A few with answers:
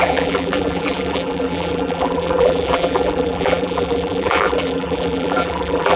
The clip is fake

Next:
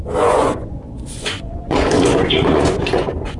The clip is fake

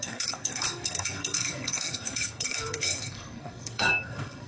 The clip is fake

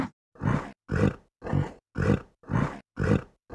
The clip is real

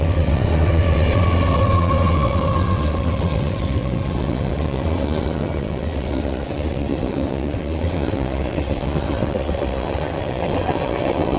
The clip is fake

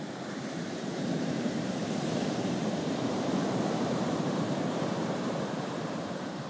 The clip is fake